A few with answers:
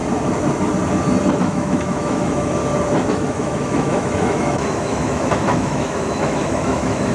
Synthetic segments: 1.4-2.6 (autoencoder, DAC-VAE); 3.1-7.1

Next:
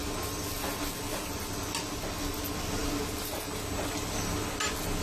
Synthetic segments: none